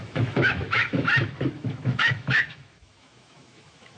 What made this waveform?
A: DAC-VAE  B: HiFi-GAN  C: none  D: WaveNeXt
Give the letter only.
A